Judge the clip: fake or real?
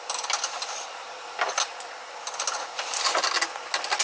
real